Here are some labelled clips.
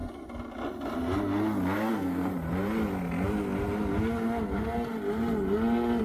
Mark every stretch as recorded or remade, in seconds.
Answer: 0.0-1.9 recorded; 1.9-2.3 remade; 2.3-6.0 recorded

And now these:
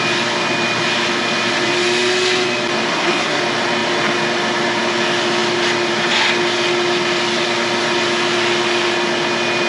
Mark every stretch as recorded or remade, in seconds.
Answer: 0.0-2.9 recorded; 2.9-3.4 remade; 3.4-9.7 recorded

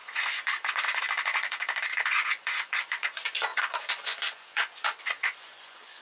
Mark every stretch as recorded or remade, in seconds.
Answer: 0.0-6.0 remade

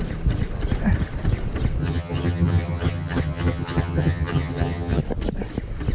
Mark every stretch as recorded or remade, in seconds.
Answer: 0.0-1.8 recorded; 1.8-5.0 remade; 5.0-5.9 recorded